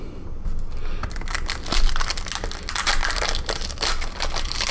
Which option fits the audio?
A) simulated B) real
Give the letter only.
B